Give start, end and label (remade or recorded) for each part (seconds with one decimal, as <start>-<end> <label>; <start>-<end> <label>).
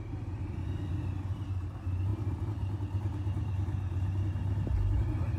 0.0-5.4 recorded